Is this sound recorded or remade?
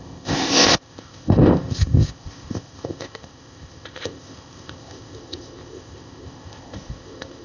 remade